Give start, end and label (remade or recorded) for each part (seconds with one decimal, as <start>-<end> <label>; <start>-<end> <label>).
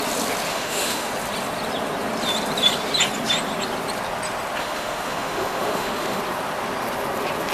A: 0.0-0.5 recorded; 0.5-1.1 remade; 1.1-4.6 recorded; 4.6-6.2 remade; 6.2-7.5 recorded